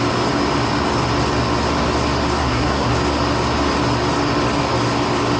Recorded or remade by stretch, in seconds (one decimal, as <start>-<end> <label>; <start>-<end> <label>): 0.0-2.4 recorded; 2.4-2.9 remade; 2.9-5.4 recorded